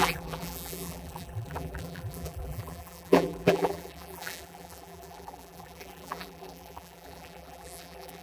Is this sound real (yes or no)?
no